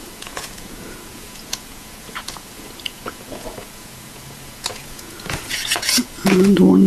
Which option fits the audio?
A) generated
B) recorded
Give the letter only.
A